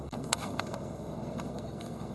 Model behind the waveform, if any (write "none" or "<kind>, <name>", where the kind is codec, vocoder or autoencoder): codec, SNAC